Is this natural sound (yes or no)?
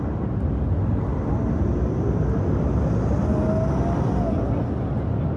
yes